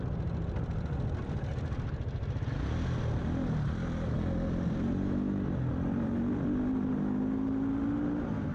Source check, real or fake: real